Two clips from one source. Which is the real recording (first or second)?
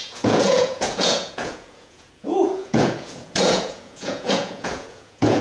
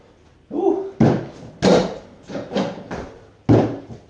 second